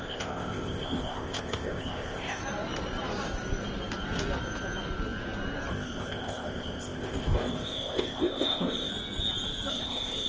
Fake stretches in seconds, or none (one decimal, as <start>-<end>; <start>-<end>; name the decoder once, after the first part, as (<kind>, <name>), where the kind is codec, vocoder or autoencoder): 0.0-2.4 (codec, ZipCodec); 5.7-8.9; 9.7-10.3

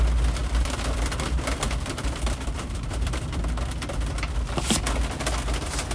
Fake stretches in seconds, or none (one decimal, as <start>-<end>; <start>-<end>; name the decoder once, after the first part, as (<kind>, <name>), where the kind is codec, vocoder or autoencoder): 0.4-3.4 (vocoder, BigVGAN v2)

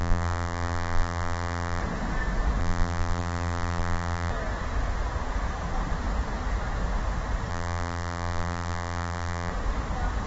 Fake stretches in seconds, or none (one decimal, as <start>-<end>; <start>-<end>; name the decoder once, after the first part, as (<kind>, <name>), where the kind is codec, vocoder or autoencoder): 0.0-1.8 (vocoder, BigVGAN v2); 2.6-4.3; 7.5-9.5